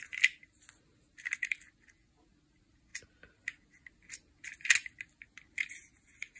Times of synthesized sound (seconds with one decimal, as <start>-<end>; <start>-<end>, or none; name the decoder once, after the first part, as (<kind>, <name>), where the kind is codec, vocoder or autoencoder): none